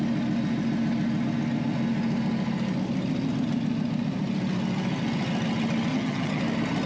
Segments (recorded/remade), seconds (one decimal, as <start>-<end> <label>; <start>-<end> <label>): 0.0-5.9 recorded; 5.9-6.4 remade; 6.4-6.9 recorded